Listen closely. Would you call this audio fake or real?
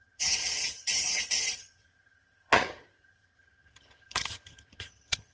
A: fake